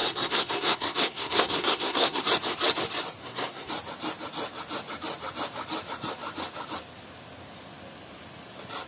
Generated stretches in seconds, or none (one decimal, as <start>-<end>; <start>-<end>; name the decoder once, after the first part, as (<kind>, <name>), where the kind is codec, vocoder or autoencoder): 0.0-2.2 (codec, SNAC); 3.2-3.7

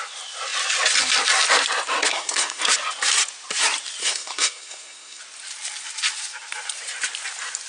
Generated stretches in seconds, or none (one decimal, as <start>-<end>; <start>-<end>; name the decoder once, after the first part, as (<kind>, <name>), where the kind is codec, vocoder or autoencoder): 2.1-2.6 (codec, SNAC); 4.0-5.2